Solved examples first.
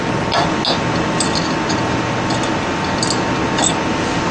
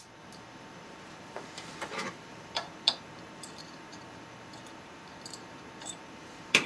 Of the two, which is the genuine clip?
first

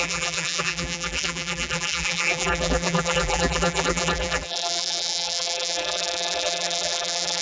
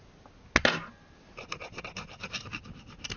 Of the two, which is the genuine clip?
second